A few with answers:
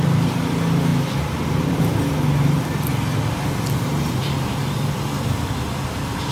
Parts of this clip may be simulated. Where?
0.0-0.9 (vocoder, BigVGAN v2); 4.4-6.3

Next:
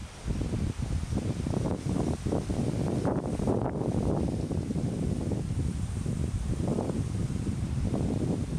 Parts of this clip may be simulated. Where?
0.0-8.6 (vocoder, BigVGAN v2)

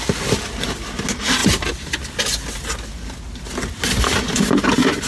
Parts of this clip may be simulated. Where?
none

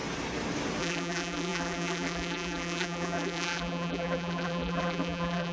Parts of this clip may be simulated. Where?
0.8-5.5 (vocoder, BigVGAN v2)

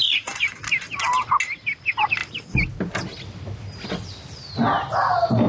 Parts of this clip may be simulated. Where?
0.0-1.0 (vocoder, BigVGAN v2)

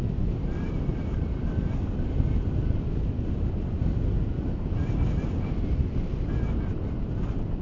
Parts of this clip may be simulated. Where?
0.9-1.5 (vocoder, BigVGAN v2)

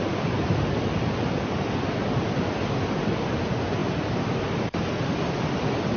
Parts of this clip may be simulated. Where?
none

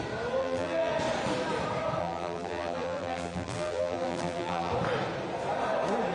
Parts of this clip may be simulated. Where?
0.4-0.9 (vocoder, BigVGAN v2); 2.0-4.7